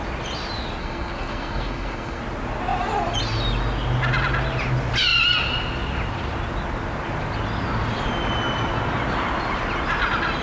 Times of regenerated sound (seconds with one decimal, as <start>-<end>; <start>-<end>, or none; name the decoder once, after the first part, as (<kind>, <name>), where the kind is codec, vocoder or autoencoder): 0.8-2.2 (codec, SNAC)

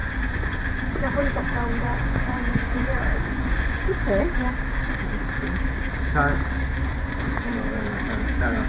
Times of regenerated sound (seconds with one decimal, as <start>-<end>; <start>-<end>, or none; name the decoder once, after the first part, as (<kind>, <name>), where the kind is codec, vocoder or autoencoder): 0.0-4.2 (vocoder, Vocos); 6.8-8.7

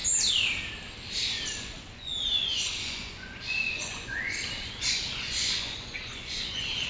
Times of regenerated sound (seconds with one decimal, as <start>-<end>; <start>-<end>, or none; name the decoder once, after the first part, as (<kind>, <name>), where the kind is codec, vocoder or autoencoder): 1.6-6.9 (vocoder, Vocos)

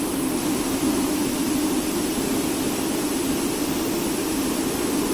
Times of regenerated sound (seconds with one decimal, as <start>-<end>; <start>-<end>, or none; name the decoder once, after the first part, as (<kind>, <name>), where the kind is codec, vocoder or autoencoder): none